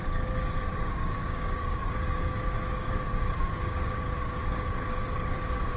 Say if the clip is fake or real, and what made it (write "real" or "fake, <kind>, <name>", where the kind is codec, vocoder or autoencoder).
fake, codec, DAC